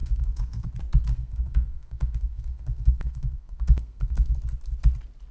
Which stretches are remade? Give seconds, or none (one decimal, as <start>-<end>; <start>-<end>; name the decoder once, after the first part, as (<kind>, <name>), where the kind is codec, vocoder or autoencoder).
0.0-0.7 (codec, SNAC); 1.1-4.3